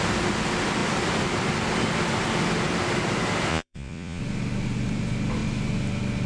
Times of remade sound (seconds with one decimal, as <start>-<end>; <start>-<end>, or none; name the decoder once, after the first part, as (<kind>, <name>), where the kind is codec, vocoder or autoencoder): 3.5-4.2 (vocoder, Vocos)

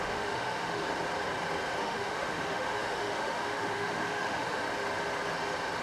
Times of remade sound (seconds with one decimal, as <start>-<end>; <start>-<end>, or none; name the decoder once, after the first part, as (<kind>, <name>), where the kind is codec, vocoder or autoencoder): 0.0-0.8 (autoencoder, DAC-VAE); 1.8-4.6

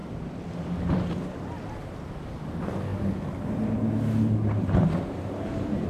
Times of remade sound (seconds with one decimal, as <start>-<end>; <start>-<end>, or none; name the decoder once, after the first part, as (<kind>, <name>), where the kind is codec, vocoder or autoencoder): none

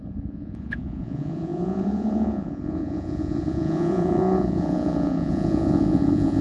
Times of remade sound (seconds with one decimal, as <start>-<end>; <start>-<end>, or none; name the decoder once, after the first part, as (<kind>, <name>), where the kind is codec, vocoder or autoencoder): 0.0-6.4 (vocoder, Vocos)

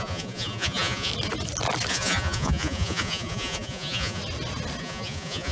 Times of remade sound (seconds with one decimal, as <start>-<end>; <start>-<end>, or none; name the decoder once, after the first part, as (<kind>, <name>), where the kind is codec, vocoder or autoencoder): 0.0-1.1 (vocoder, Vocos); 1.9-4.2; 4.8-5.5

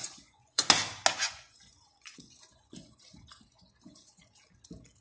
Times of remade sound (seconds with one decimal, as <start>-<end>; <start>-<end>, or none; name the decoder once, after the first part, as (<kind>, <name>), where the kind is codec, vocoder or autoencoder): 0.0-0.6 (vocoder, Vocos); 1.2-4.2

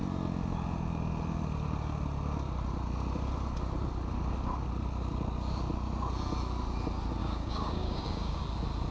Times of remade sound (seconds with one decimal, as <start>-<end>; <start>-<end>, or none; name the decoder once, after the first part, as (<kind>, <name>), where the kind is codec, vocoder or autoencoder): 7.2-8.4 (codec, DAC)